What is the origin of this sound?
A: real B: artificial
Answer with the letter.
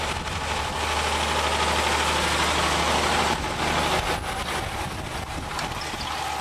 A